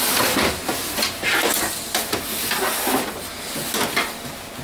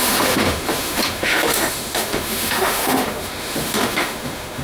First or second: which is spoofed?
second